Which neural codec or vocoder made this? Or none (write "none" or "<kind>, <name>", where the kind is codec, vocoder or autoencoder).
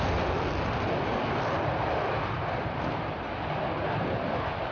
none